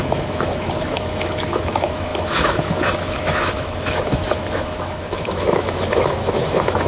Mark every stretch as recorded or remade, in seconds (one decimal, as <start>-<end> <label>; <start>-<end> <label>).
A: 0.0-6.9 remade